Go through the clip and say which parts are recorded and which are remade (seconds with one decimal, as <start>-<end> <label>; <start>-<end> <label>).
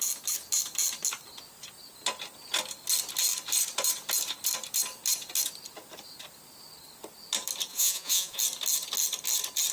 0.0-7.7 recorded; 7.7-8.4 remade; 8.4-9.7 recorded